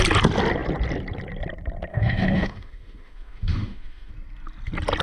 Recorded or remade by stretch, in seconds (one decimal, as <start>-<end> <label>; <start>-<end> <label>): 0.0-1.9 recorded; 1.9-4.1 remade; 4.1-5.0 recorded